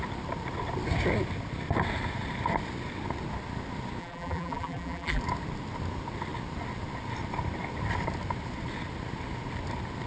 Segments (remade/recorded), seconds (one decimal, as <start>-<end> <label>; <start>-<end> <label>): 0.0-4.0 recorded; 4.0-5.2 remade; 5.2-10.1 recorded